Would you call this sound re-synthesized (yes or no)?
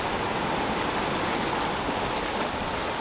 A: no